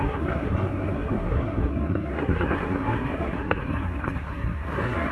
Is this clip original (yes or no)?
no